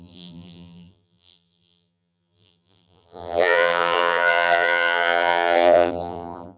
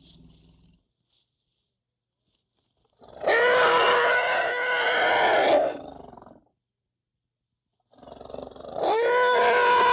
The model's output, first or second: first